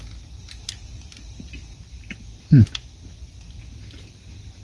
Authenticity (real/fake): real